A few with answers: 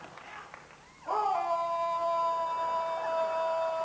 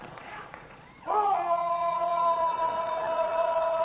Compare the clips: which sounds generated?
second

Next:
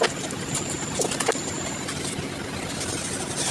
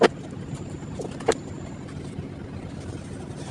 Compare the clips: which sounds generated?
second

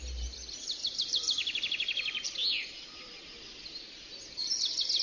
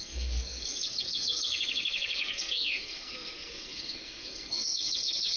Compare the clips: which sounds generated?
second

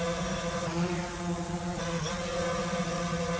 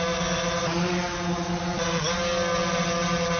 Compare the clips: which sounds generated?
first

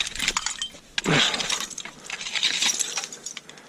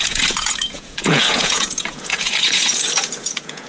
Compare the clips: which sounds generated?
second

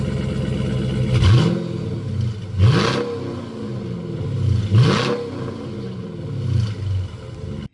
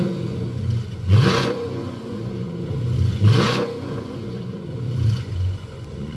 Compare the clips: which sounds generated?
second